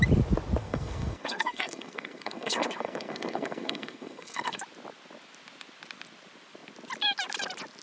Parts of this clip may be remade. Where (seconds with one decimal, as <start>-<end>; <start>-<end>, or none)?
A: 0.6-4.6